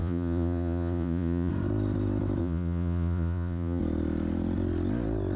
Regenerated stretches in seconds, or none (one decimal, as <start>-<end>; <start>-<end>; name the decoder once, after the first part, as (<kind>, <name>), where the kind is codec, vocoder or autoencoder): 0.0-1.5 (vocoder, Vocos); 2.4-3.8